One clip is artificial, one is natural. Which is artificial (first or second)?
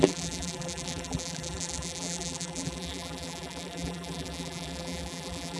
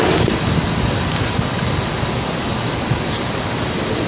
first